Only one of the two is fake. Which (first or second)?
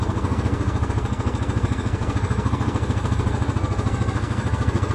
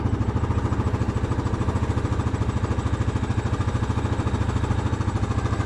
first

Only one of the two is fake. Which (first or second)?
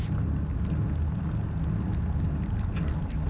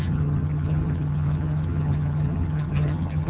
second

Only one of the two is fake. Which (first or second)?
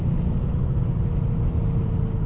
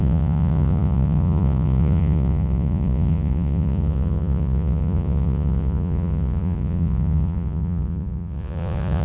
second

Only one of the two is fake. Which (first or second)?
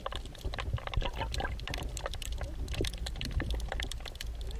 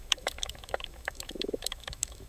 second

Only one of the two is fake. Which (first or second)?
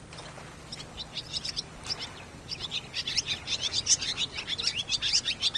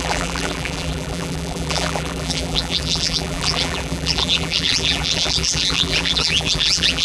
second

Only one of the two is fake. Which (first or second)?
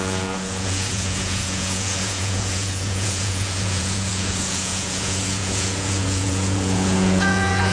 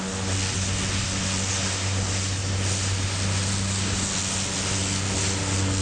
first